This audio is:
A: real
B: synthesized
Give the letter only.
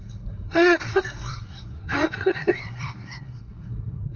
B